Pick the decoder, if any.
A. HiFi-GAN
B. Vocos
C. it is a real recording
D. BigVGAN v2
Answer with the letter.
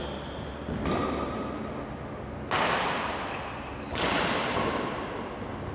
C